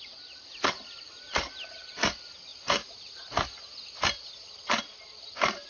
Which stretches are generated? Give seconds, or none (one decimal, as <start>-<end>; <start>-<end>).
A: none